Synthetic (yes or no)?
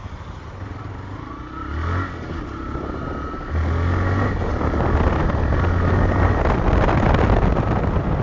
no